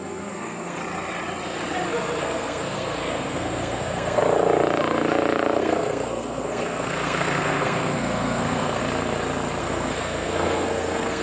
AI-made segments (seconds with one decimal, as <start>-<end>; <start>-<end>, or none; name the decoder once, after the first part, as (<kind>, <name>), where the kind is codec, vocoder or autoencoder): 0.0-0.8 (codec, SNAC); 2.2-4.2; 5.6-8.8; 9.6-11.2